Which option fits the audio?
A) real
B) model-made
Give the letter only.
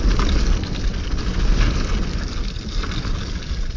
A